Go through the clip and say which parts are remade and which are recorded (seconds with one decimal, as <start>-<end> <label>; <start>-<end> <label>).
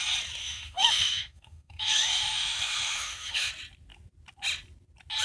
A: 0.0-0.4 recorded; 0.4-3.5 remade; 3.5-5.2 recorded